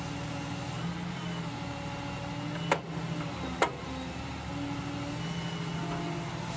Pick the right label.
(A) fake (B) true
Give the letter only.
B